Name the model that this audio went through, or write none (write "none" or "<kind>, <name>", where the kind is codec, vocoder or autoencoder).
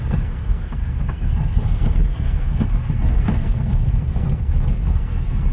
codec, SNAC